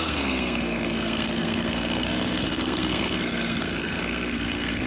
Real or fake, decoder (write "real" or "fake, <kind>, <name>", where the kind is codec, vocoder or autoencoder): fake, codec, SNAC